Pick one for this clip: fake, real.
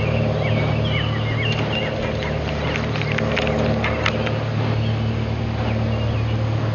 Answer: real